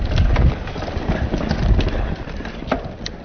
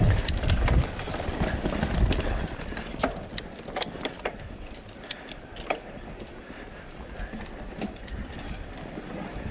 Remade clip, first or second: second